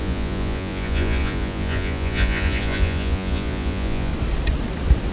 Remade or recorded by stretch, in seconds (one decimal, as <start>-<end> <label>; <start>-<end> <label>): 0.0-4.1 remade; 4.1-5.1 recorded